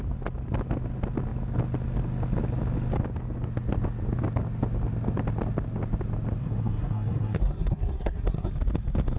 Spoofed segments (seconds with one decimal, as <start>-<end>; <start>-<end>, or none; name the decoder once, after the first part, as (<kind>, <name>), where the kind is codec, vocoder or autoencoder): 6.4-8.5 (codec, SNAC)